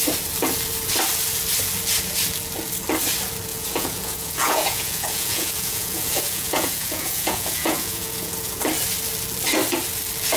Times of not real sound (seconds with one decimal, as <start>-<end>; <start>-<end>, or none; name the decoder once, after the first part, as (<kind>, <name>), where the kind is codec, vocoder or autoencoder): 3.5-8.6 (vocoder, Vocos)